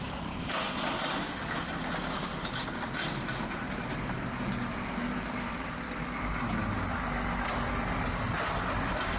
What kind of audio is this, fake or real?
real